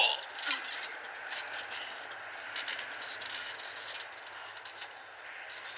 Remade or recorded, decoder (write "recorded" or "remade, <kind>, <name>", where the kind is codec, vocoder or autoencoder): recorded